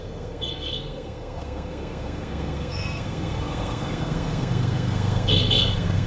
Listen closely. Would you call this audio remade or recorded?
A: remade